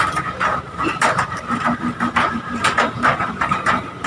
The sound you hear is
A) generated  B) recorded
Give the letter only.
A